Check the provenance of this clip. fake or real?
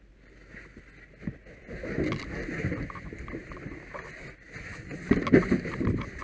real